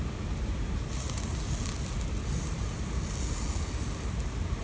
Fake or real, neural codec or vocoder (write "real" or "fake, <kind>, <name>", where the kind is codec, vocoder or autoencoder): real